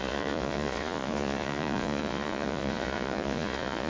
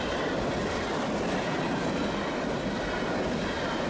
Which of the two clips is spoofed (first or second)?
first